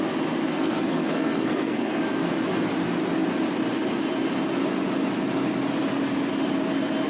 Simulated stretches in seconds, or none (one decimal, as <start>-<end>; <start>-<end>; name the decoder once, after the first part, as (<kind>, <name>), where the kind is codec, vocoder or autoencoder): 0.4-2.0 (codec, SNAC)